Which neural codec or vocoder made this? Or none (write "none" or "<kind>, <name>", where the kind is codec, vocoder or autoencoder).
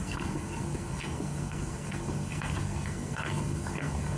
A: codec, SNAC